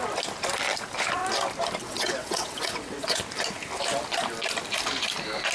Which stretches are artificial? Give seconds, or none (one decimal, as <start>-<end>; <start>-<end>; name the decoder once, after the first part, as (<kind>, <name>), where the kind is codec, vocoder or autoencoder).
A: 1.8-3.2 (vocoder, WaveNeXt)